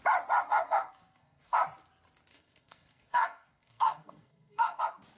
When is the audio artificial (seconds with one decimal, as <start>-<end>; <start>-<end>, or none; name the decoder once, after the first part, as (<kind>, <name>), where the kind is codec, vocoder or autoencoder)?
0.5-1.6 (codec, SNAC); 2.3-4.8